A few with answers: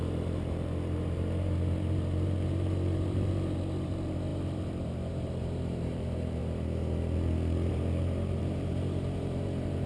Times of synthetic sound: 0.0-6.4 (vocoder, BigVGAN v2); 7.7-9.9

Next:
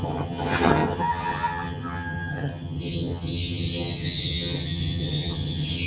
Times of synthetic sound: 0.0-5.9 (vocoder, HiFi-GAN)

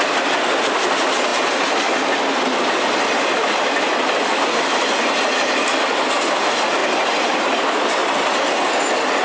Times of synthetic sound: none

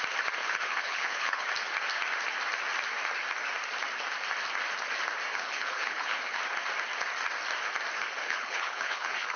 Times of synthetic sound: 0.4-1.5 (codec, HILCodec); 5.3-6.4; 8.2-9.4

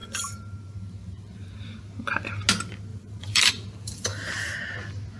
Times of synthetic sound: 0.0-1.5 (vocoder, BigVGAN v2); 2.9-3.5

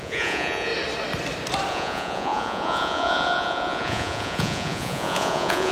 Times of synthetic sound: 0.0-0.7 (vocoder, Vocos); 1.7-5.7